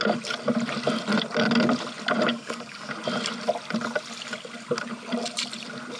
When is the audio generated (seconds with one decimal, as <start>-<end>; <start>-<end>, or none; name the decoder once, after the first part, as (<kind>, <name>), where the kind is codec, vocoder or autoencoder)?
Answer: 2.3-2.9 (codec, DAC)